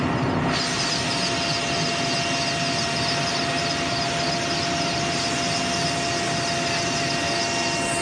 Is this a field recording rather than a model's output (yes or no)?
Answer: yes